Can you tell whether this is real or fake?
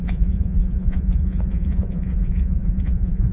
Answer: fake